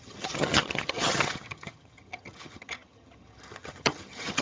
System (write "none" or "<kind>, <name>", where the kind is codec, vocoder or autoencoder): vocoder, HiFi-GAN